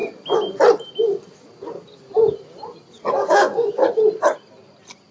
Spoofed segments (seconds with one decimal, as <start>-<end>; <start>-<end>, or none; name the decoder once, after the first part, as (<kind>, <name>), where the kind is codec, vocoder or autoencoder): 3.1-3.8 (codec, DAC)